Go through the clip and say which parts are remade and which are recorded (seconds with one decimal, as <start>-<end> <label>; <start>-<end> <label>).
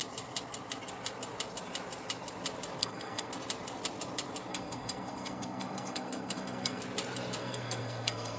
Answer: 0.0-2.8 recorded; 2.8-3.3 remade; 3.3-4.5 recorded; 4.5-6.8 remade; 6.8-7.4 recorded; 7.4-8.4 remade